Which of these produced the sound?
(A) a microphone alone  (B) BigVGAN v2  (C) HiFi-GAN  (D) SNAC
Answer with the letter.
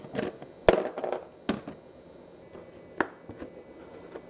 A